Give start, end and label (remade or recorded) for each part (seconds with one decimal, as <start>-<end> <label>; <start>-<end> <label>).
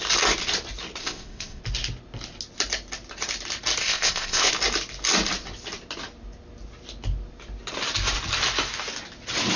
0.0-1.0 recorded; 1.0-1.6 remade; 1.6-3.8 recorded; 3.8-4.5 remade; 4.5-9.6 recorded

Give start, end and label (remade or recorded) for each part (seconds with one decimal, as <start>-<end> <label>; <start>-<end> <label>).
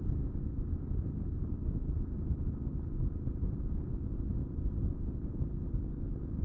0.0-6.4 recorded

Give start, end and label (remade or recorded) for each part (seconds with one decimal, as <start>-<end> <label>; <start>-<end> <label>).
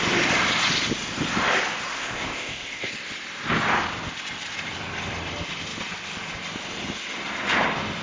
0.0-1.9 recorded; 1.9-2.9 remade; 2.9-8.0 recorded